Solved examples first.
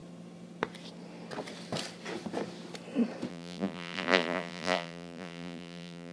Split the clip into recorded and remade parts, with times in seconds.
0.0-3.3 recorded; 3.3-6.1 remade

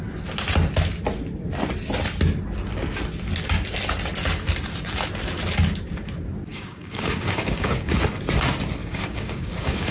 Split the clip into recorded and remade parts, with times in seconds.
0.0-6.5 recorded; 6.5-8.0 remade; 8.0-8.8 recorded; 8.8-9.9 remade

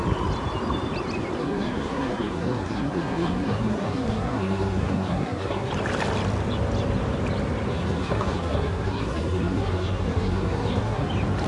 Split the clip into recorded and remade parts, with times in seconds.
0.0-1.4 recorded; 1.4-5.7 remade; 5.7-7.7 recorded; 7.7-11.1 remade; 11.1-11.5 recorded

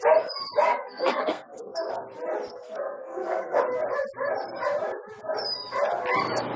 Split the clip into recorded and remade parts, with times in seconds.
0.0-0.7 recorded; 0.7-1.9 remade; 1.9-2.5 recorded; 2.5-3.6 remade; 3.6-6.6 recorded

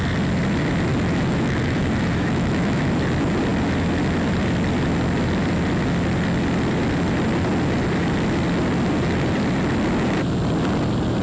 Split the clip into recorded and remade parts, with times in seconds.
0.0-0.9 recorded; 0.9-2.9 remade; 2.9-11.2 recorded

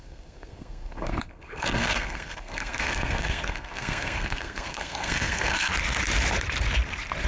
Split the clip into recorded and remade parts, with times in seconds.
0.0-5.7 remade; 5.7-7.3 recorded